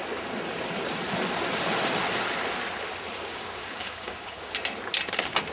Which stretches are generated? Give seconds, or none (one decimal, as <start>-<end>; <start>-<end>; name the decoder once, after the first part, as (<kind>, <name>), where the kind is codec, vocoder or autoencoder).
3.3-4.5 (codec, DAC)